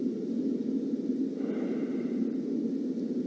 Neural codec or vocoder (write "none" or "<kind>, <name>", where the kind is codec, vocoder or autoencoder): none